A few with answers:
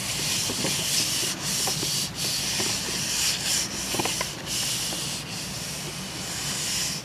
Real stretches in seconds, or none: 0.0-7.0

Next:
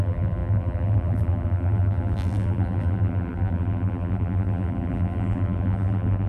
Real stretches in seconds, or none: none

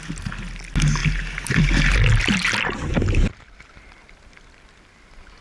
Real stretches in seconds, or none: 0.0-5.4

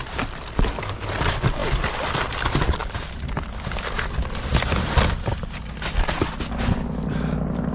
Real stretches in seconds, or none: 0.7-7.7

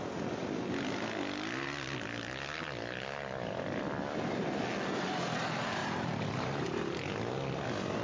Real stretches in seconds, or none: 0.0-5.8; 6.8-8.0